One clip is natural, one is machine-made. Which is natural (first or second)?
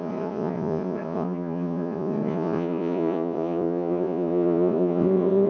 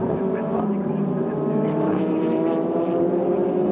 second